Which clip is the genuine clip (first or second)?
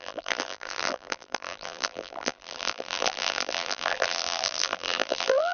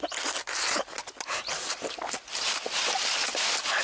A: second